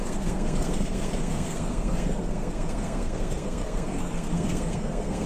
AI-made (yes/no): yes